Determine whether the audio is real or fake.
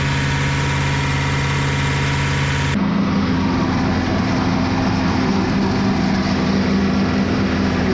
real